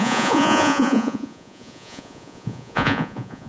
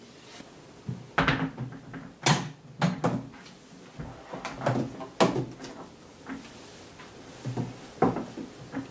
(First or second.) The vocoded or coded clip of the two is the first